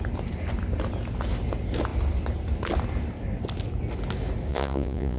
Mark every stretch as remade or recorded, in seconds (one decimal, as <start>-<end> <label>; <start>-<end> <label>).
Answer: 0.0-4.5 recorded; 4.5-5.2 remade

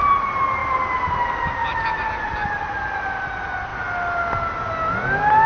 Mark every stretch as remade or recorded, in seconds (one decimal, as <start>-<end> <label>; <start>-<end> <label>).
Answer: 0.0-1.6 recorded; 1.6-3.1 remade; 3.1-5.5 recorded

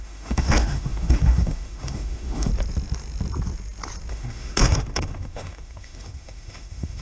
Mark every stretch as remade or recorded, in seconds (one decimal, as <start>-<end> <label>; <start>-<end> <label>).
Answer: 0.0-2.5 remade; 2.5-4.1 recorded; 4.1-7.0 remade

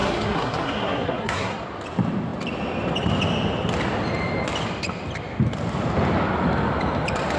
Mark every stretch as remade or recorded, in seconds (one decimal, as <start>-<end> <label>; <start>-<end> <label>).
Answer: 0.0-1.6 remade; 1.6-7.4 recorded

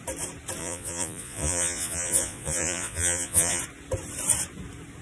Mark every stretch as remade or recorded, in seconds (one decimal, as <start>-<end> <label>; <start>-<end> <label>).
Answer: 0.0-0.6 recorded; 0.6-3.6 remade; 3.6-5.0 recorded

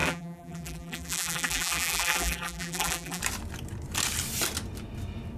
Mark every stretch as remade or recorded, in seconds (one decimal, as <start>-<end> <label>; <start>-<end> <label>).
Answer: 0.0-3.2 remade; 3.2-5.4 recorded

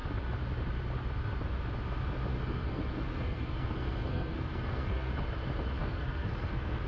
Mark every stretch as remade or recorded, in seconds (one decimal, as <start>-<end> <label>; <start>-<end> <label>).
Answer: 0.0-2.3 recorded; 2.3-5.1 remade; 5.1-5.8 recorded; 5.8-6.9 remade

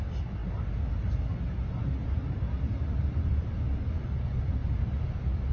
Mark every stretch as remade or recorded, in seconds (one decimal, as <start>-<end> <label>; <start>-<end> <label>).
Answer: 0.0-5.5 recorded